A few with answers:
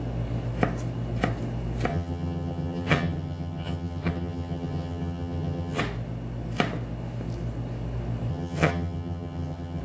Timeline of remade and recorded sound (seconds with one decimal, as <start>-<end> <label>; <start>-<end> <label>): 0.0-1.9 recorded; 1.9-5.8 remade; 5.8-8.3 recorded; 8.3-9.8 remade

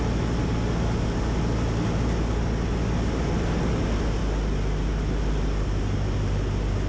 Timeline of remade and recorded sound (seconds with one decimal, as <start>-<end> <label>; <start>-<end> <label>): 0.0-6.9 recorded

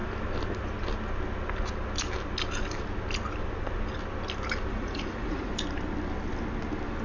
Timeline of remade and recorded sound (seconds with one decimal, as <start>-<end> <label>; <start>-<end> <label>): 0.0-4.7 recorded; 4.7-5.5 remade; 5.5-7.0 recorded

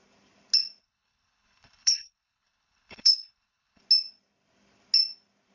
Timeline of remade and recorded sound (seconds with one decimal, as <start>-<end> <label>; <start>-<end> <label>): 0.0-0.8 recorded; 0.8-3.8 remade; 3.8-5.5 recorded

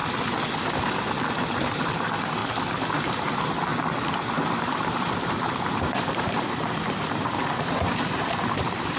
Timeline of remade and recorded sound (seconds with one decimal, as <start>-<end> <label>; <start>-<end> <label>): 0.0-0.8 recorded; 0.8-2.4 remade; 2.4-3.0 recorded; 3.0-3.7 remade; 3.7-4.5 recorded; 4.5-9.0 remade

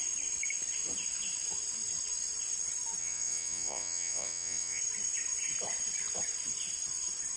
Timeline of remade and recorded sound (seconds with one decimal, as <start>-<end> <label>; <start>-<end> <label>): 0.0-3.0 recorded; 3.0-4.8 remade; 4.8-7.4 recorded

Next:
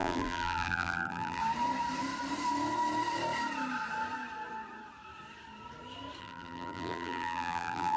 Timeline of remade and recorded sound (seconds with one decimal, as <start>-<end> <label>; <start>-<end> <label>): 0.0-1.4 remade; 1.4-6.2 recorded; 6.2-8.0 remade

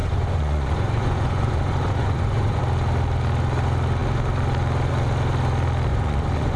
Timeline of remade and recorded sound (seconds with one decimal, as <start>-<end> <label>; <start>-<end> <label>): 0.0-2.6 remade; 2.6-5.9 recorded; 5.9-6.6 remade